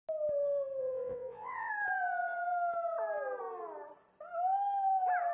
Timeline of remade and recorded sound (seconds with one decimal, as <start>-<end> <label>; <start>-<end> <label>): 0.0-0.8 recorded; 0.8-1.7 remade; 1.7-5.3 recorded